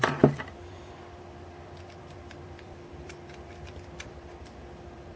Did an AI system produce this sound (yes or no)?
yes